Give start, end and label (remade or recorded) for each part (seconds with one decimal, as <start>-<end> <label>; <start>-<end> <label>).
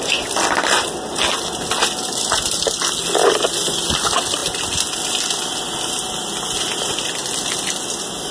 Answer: 0.0-8.3 recorded